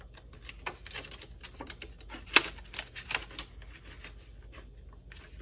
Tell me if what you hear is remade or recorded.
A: recorded